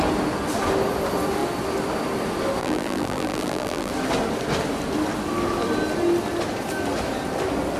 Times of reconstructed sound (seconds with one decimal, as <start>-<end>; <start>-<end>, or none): 2.6-3.9